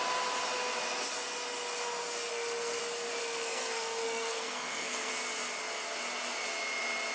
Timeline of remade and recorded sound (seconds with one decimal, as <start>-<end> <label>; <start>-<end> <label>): 0.0-2.3 recorded; 2.3-2.8 remade; 2.8-3.2 recorded; 3.2-5.1 remade; 5.1-7.1 recorded